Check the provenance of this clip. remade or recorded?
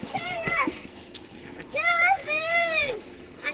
remade